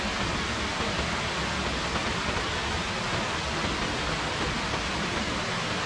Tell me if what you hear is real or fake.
real